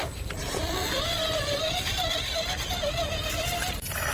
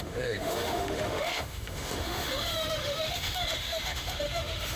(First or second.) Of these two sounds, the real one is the first